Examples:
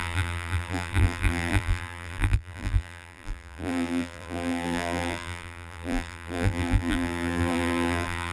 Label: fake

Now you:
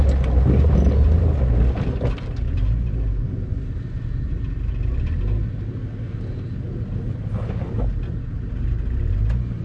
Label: real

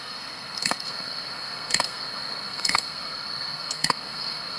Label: fake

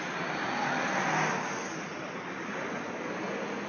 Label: real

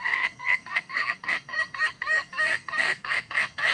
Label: fake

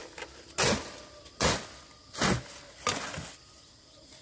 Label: real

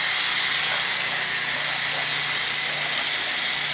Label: real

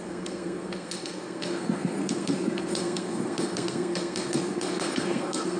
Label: fake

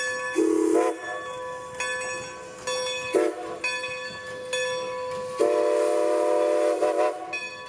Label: real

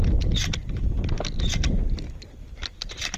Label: real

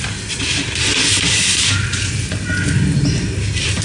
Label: real